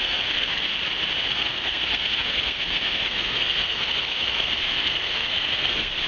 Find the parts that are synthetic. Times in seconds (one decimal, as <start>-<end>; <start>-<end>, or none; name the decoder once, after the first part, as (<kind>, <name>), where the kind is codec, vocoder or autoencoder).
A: 0.0-0.7 (codec, SNAC); 1.3-6.1